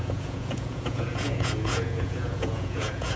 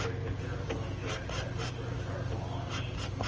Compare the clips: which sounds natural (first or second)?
second